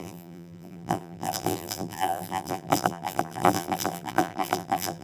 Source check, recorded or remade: remade